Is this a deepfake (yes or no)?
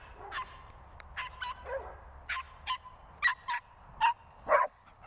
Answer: no